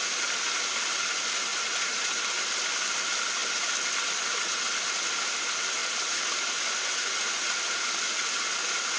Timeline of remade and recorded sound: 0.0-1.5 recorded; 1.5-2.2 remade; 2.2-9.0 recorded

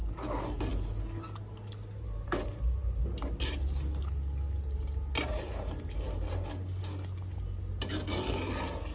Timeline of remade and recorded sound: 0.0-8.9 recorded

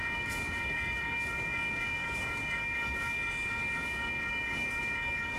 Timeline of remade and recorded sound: 0.0-5.4 remade